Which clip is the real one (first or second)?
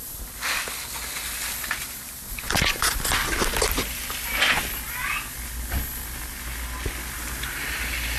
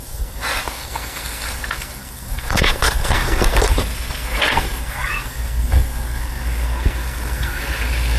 first